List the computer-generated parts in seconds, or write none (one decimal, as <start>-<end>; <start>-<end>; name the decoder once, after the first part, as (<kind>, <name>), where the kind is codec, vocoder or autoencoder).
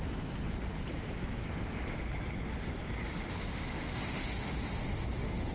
3.5-5.5 (autoencoder, DAC-VAE)